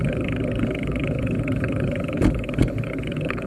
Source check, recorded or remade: remade